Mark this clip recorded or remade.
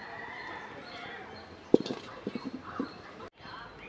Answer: recorded